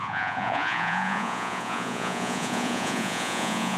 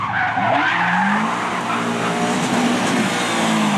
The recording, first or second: second